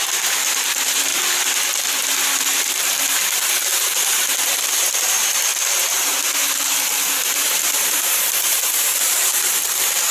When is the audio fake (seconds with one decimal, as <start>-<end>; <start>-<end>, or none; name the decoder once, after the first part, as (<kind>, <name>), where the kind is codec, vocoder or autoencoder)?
0.0-1.1 (vocoder, BigVGAN v2); 2.4-10.1